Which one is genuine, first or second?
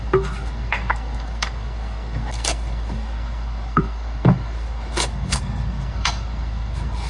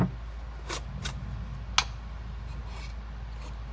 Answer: second